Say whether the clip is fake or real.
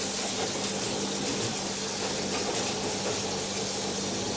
real